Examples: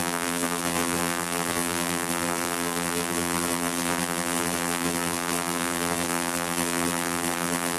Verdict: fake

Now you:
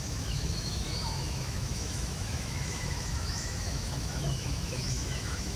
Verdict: fake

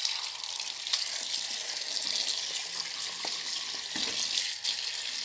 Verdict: real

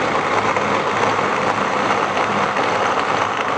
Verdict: real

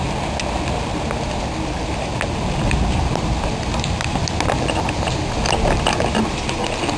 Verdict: real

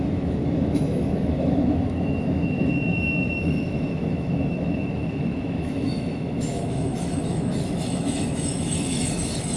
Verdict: fake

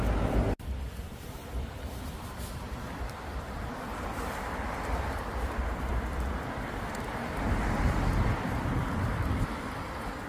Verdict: fake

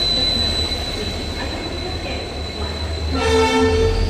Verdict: real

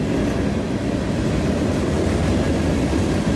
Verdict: real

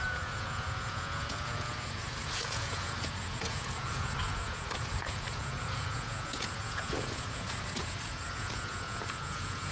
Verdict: fake